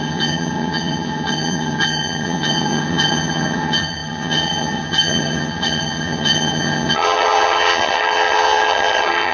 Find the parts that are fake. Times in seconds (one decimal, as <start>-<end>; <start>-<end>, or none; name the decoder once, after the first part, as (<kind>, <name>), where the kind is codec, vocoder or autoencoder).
0.0-9.3 (vocoder, HiFi-GAN)